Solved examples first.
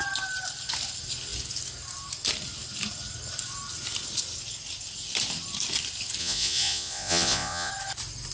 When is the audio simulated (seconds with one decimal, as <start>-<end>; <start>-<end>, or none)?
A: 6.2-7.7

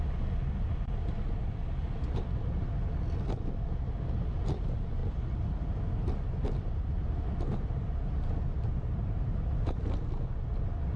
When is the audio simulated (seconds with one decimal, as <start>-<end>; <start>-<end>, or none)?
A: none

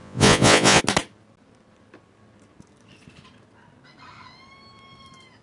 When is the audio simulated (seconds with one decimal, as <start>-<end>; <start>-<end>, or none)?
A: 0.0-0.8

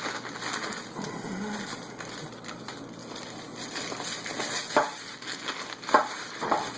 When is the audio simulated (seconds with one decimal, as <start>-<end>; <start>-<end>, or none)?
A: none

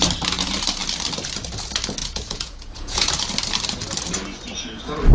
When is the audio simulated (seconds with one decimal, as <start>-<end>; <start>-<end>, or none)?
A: 2.0-3.1